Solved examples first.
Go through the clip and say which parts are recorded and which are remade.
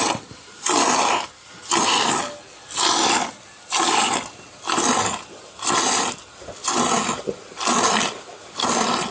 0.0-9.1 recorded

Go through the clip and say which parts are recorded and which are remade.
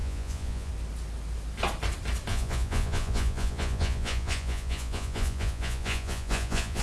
0.0-0.7 remade; 0.7-2.3 recorded; 2.3-6.8 remade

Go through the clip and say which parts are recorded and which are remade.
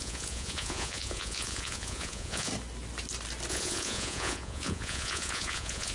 0.0-2.5 remade; 2.5-3.5 recorded; 3.5-5.9 remade